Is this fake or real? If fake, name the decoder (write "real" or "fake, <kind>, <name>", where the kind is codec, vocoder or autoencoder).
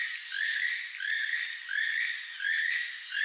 real